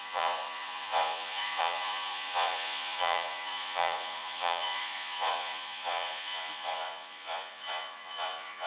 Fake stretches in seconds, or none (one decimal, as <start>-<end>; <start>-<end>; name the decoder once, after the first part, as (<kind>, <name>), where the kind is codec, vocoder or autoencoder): 0.0-8.7 (vocoder, Vocos)